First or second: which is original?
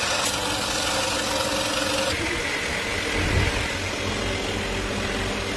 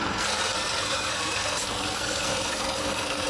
first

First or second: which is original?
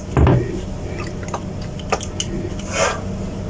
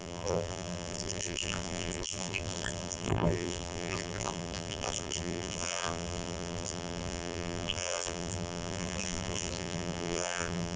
first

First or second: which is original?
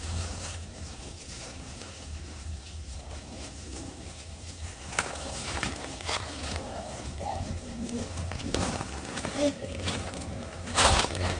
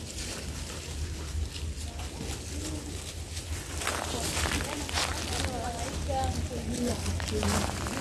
second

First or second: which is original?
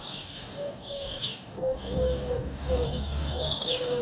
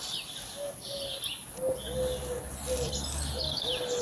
second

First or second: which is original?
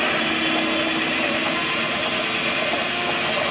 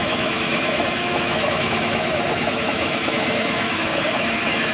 first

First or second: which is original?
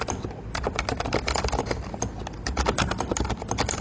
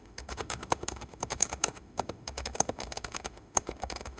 first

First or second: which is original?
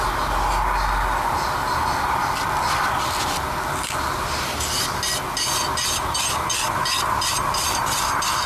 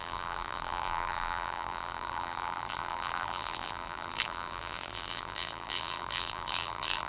first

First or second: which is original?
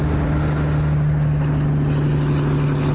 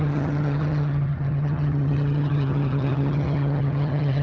first